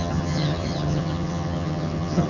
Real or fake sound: fake